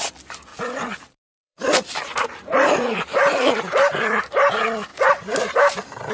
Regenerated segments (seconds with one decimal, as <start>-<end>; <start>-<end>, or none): 0.5-4.2; 4.9-6.1